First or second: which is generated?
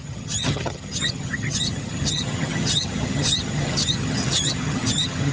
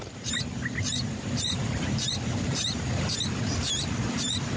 first